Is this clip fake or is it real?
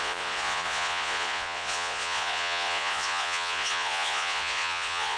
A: fake